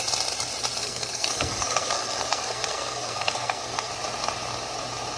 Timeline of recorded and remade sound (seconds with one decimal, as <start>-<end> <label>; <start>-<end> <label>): 0.0-0.8 recorded; 0.8-3.9 remade; 3.9-5.2 recorded